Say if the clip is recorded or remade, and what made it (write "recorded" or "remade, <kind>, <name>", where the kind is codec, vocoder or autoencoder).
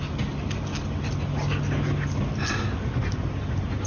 recorded